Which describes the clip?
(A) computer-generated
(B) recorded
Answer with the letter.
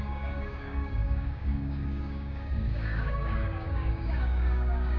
A